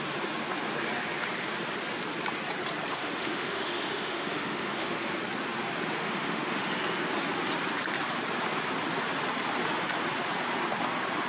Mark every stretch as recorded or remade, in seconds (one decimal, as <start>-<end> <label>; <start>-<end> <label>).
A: 0.0-2.9 recorded; 2.9-5.1 remade; 5.1-6.0 recorded; 6.0-6.7 remade; 6.7-11.3 recorded